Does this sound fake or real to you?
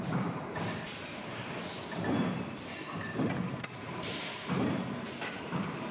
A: fake